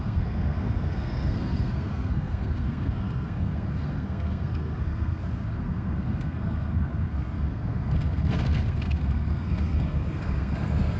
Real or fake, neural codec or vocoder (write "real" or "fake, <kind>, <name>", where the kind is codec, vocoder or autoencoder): fake, codec, SNAC